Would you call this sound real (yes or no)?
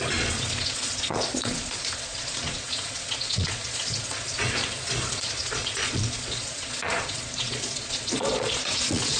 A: no